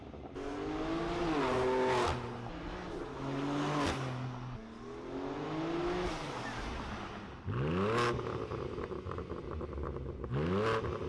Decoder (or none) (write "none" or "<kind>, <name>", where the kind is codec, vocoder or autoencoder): none